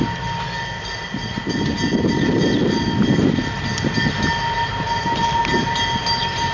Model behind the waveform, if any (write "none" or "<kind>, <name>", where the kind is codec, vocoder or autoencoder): none